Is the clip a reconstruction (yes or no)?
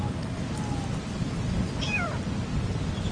yes